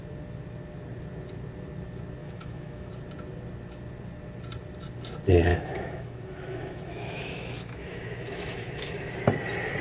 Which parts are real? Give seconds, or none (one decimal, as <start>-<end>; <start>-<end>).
0.0-2.2; 2.9-5.5; 8.9-9.8